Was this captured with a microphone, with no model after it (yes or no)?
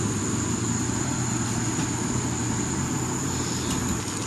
yes